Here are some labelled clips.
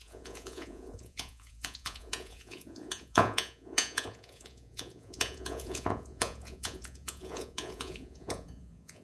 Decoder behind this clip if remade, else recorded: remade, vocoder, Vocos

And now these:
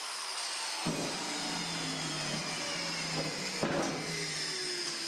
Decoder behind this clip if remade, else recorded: recorded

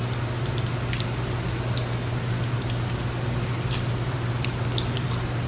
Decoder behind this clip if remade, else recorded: recorded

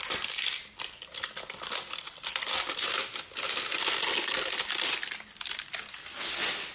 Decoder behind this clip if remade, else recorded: recorded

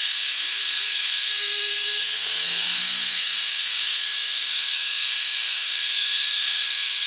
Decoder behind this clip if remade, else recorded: remade, codec, SNAC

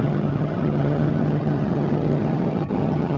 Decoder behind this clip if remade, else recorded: remade, vocoder, HiFi-GAN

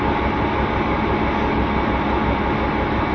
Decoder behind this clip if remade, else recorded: recorded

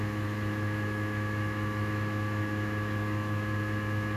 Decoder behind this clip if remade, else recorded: remade, autoencoder, DAC-VAE